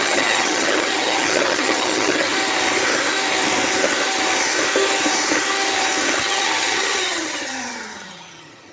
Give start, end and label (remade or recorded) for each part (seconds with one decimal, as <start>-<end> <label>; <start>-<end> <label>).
0.0-2.3 remade; 2.3-6.2 recorded; 6.2-8.7 remade